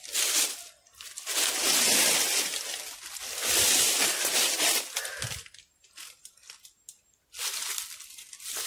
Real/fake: real